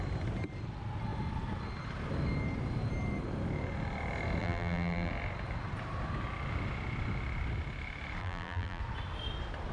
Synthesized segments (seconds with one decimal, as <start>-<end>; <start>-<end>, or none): 4.4-5.1; 8.2-8.8